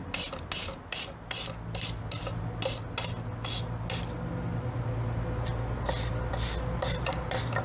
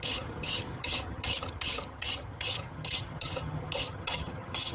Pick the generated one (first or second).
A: second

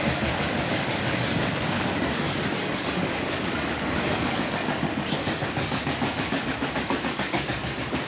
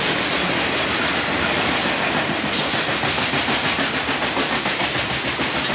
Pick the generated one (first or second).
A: first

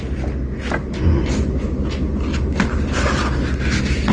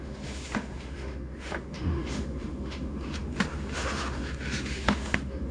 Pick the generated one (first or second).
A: second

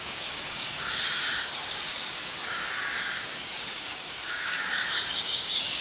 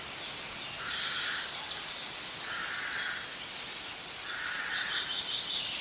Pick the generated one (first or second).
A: first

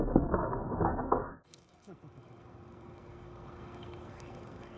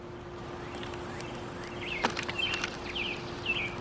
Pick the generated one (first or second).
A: first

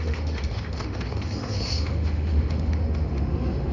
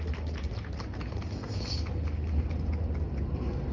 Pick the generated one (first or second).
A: first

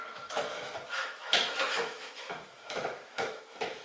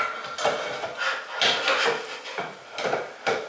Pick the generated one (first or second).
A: first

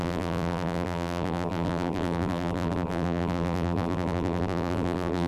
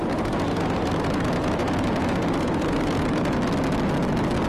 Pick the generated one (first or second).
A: first